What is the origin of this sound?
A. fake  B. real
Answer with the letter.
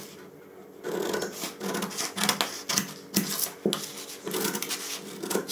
B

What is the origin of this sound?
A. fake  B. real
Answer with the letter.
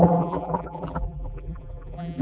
A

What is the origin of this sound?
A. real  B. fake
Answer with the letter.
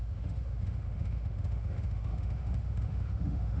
B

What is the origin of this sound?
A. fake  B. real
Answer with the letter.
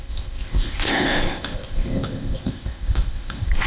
A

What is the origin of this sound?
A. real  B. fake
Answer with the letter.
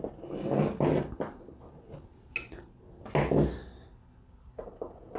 A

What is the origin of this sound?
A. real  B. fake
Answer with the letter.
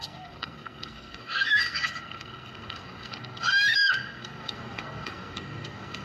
B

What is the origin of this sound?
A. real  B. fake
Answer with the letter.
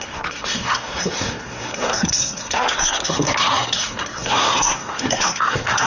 B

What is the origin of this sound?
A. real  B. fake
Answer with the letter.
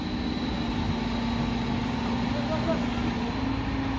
A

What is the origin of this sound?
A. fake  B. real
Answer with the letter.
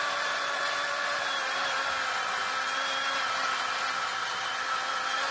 B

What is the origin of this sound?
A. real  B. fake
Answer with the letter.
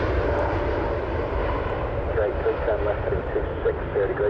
A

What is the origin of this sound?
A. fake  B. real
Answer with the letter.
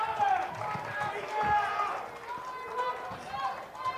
B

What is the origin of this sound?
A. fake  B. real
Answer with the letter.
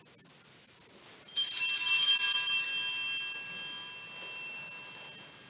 B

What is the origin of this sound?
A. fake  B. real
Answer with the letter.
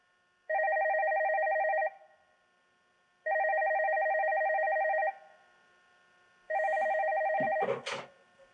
B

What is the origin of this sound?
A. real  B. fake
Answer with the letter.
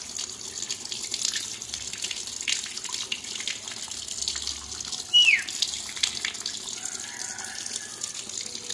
A